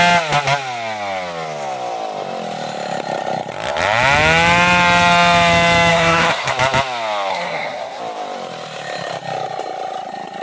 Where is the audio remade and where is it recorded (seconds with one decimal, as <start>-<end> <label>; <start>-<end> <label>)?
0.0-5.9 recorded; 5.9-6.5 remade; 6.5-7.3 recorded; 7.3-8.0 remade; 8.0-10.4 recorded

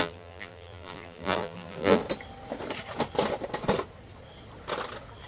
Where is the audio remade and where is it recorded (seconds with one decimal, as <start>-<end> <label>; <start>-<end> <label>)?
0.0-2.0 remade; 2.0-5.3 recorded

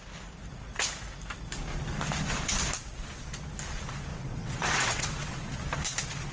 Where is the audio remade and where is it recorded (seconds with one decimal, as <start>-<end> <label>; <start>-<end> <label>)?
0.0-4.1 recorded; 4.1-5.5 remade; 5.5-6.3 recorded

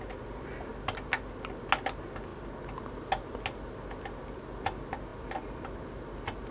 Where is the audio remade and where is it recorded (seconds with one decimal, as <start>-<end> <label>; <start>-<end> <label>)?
0.0-6.5 recorded